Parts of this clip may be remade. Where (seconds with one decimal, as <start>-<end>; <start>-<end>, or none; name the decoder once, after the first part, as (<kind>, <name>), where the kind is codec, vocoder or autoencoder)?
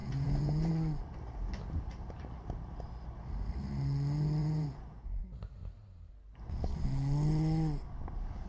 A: 0.0-0.7 (vocoder, Vocos); 4.4-5.2